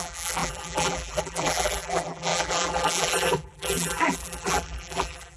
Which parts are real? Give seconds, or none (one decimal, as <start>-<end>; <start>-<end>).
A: none